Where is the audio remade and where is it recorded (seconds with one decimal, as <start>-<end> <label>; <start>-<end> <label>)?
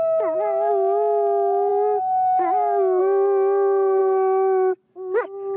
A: 0.0-5.6 recorded